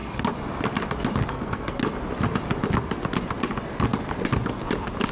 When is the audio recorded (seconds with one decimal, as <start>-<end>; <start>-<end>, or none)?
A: 0.0-1.3; 1.8-5.1